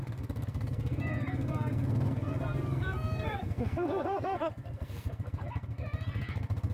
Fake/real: fake